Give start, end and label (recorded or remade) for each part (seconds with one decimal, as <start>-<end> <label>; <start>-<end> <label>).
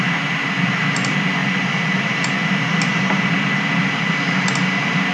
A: 0.0-5.1 recorded